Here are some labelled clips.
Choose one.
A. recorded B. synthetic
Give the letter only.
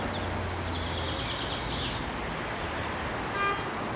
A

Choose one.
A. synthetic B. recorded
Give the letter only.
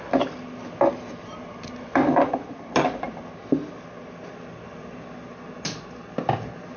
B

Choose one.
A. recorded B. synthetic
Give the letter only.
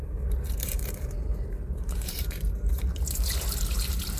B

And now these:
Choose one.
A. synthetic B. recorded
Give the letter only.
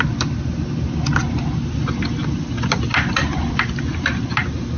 B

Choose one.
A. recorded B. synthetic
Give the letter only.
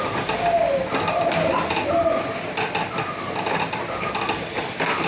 A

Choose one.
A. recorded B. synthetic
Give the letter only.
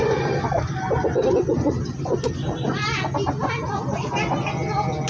A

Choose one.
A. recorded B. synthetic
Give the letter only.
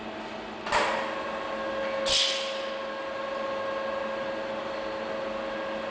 A